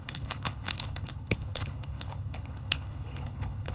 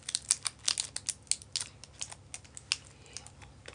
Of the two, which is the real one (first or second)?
second